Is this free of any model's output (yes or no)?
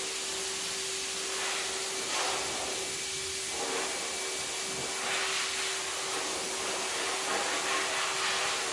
yes